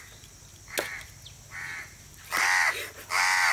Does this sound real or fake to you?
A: real